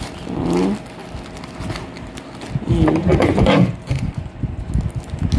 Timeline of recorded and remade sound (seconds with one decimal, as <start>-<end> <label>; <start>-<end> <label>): 0.0-3.0 recorded; 3.0-4.7 remade; 4.7-5.4 recorded